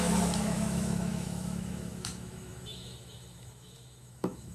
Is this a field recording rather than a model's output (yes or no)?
no